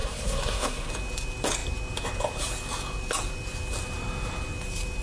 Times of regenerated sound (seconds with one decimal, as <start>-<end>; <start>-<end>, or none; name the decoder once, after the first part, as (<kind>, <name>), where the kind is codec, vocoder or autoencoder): 0.0-0.9 (codec, SNAC)